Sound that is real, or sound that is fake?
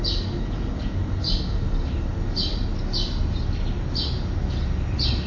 real